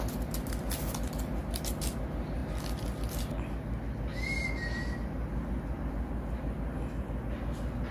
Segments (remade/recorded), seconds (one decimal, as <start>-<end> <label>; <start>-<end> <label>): 0.0-7.9 recorded

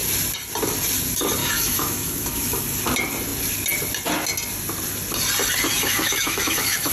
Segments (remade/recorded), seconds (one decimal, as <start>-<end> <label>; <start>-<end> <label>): 0.0-1.4 recorded; 1.4-2.6 remade; 2.6-5.7 recorded; 5.7-6.9 remade

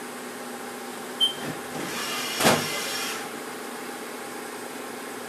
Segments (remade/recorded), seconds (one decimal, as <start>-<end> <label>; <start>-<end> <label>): 0.0-0.9 recorded; 0.9-4.1 remade; 4.1-5.3 recorded

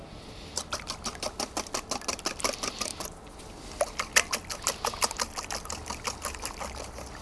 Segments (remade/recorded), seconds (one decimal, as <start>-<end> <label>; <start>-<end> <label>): 0.0-7.2 recorded

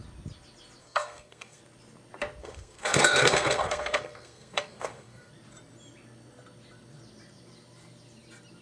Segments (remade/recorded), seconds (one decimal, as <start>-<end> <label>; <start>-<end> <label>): 0.0-0.8 recorded; 0.8-1.6 remade; 1.6-2.4 recorded; 2.4-5.3 remade; 5.3-8.6 recorded

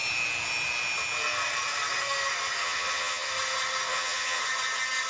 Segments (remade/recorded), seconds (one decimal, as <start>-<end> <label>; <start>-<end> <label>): 0.0-2.6 recorded; 2.6-3.3 remade; 3.3-3.9 recorded; 3.9-4.4 remade; 4.4-5.1 recorded